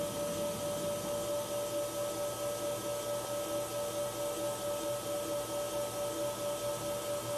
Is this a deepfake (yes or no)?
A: no